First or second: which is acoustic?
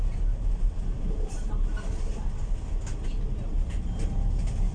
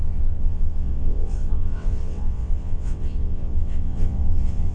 first